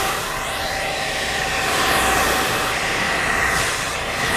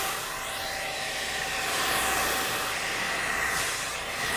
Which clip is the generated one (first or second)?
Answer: first